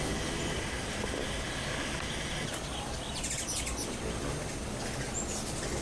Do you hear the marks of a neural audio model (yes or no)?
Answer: no